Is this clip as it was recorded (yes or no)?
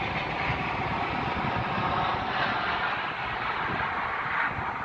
yes